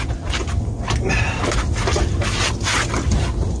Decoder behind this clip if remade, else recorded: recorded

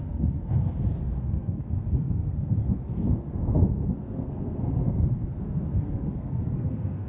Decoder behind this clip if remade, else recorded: remade, codec, SNAC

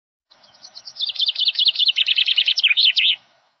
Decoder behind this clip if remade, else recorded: remade, autoencoder, DAC-VAE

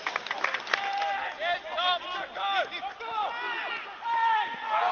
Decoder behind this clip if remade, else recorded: recorded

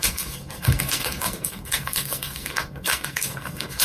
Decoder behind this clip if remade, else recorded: remade, codec, SNAC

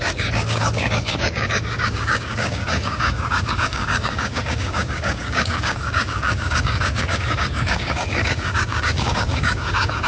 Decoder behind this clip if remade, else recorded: remade, codec, DAC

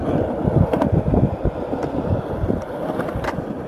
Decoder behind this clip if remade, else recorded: recorded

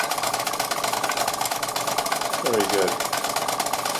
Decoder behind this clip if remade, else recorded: recorded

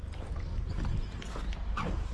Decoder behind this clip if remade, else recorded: recorded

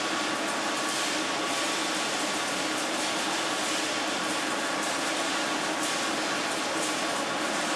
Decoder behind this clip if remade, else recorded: recorded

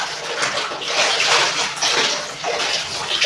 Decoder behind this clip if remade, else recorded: recorded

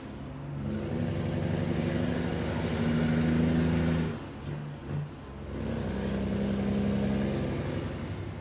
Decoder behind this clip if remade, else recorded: recorded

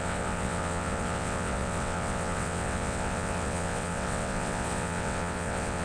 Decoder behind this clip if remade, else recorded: remade, vocoder, WaveNeXt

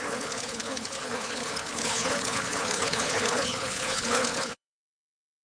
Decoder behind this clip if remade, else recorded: remade, codec, HILCodec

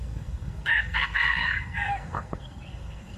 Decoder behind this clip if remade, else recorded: remade, codec, SNAC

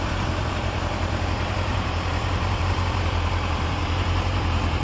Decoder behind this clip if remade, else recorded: remade, vocoder, BigVGAN v2